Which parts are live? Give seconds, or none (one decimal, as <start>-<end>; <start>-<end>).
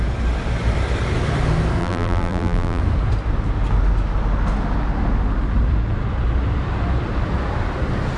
0.0-1.8; 2.8-8.2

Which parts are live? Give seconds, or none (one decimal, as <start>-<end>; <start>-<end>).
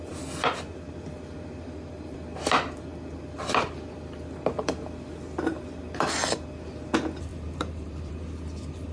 0.0-7.3; 8.1-8.9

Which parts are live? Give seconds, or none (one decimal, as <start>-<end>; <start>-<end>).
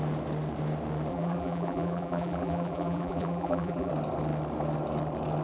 0.0-1.1; 3.9-5.4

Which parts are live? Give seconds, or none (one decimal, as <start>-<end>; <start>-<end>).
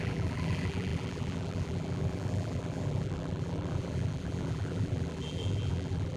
none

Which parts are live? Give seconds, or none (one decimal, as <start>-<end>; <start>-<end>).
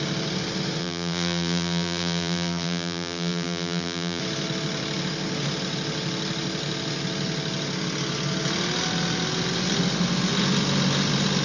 0.0-0.8; 4.2-11.4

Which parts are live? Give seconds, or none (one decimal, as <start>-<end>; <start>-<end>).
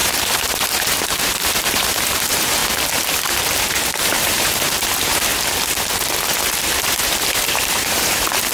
2.6-3.2; 5.3-6.4